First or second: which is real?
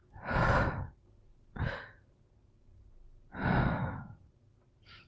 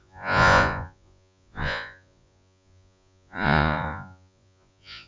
first